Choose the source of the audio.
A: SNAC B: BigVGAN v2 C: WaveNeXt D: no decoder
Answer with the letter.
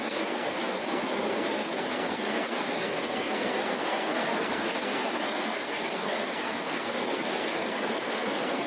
A